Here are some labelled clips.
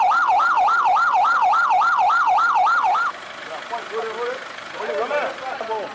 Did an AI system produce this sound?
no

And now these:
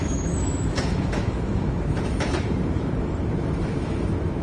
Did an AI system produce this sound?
yes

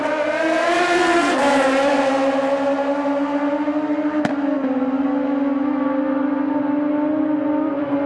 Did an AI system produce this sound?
no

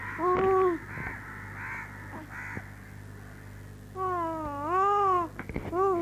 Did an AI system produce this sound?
no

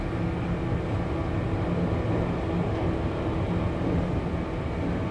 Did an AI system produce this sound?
no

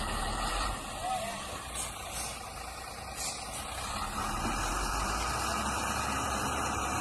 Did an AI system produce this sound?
yes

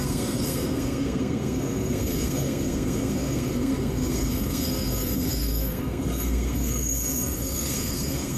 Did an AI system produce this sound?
yes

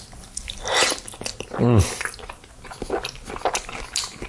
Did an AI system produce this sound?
no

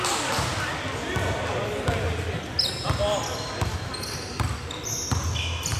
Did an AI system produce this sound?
no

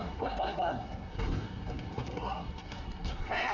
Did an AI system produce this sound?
yes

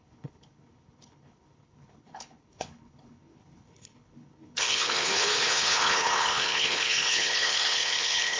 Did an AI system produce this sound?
yes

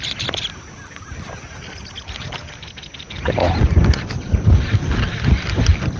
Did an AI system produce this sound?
no